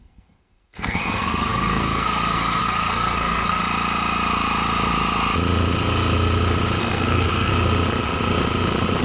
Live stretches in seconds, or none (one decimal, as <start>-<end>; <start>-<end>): 3.6-6.8; 7.5-9.0